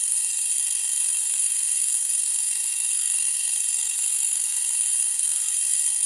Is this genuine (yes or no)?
no